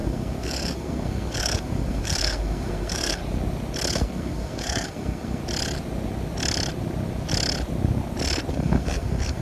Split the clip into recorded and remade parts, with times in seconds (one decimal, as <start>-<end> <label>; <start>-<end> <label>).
0.0-3.2 remade; 3.2-3.9 recorded; 3.9-5.4 remade; 5.4-8.5 recorded; 8.5-9.4 remade